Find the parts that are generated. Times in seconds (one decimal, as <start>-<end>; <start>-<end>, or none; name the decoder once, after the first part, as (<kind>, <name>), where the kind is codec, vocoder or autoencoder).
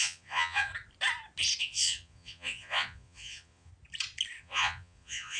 0.0-0.7 (vocoder, Vocos); 1.6-3.7; 4.4-5.4